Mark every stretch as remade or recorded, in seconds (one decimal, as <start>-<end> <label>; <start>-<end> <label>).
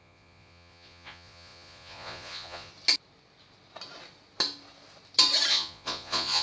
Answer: 0.0-2.7 remade; 2.7-5.5 recorded; 5.5-6.4 remade